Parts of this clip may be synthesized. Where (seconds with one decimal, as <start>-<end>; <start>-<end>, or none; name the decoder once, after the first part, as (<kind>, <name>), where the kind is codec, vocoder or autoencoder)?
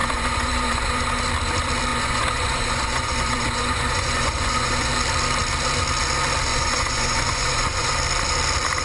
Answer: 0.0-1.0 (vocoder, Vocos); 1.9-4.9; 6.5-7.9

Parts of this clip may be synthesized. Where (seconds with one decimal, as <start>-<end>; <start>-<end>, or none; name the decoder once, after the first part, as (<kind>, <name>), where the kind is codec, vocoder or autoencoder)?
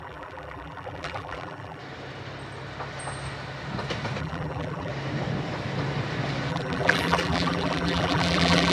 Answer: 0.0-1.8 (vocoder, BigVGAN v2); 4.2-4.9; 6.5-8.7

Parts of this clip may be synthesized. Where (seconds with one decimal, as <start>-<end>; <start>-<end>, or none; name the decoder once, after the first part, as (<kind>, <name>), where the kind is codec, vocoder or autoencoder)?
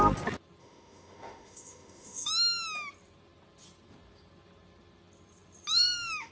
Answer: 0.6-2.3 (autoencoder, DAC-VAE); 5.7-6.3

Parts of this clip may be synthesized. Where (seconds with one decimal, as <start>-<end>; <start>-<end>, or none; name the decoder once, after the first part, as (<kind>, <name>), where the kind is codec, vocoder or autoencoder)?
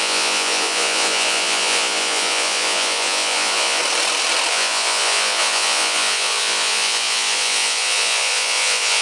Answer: 0.0-3.8 (vocoder, Vocos); 4.5-9.0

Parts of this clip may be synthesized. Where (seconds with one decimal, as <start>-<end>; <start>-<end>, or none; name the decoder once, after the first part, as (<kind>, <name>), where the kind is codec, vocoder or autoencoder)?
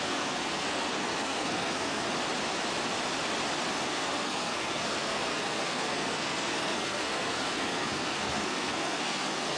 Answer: 0.0-2.0 (codec, SNAC); 3.7-9.6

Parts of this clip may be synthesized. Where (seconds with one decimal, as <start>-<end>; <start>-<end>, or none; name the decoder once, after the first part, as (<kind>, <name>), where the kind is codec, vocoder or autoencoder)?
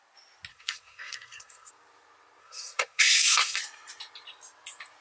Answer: 0.5-1.7 (codec, SNAC); 2.4-3.6